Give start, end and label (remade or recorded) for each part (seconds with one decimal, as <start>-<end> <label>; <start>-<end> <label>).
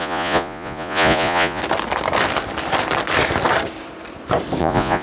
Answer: 0.0-1.6 remade; 1.6-4.6 recorded; 4.6-5.0 remade